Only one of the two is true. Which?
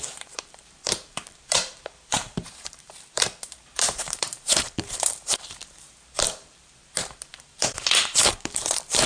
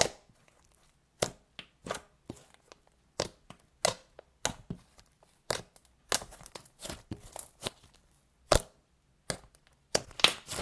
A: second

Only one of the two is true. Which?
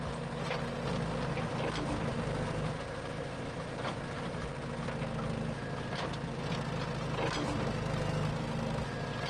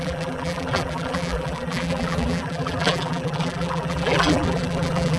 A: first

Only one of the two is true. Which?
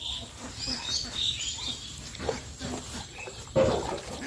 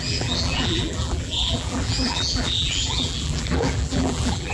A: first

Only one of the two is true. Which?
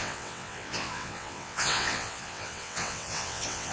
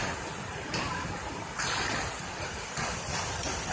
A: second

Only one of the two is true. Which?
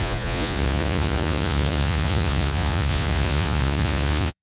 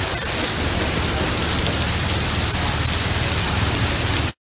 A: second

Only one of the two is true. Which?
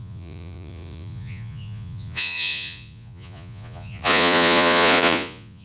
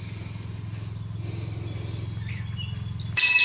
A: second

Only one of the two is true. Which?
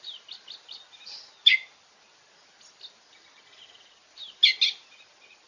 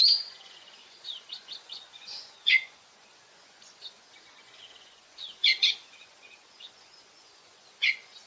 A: first